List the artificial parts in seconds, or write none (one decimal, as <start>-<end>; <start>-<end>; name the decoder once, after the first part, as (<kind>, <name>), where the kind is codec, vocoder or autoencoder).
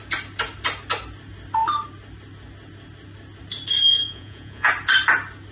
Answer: 3.9-4.7 (vocoder, Vocos)